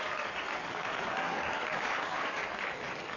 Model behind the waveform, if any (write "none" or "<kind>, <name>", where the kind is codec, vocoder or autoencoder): codec, DAC